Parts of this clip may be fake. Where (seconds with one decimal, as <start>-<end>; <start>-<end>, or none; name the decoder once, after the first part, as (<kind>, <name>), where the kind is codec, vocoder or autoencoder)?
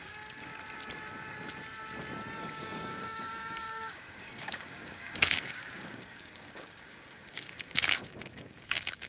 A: 0.0-0.5 (codec, DAC); 2.4-9.1